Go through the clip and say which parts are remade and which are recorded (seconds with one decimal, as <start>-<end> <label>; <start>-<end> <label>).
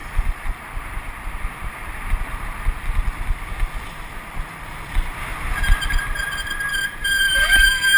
0.0-5.3 remade; 5.3-5.9 recorded; 5.9-8.0 remade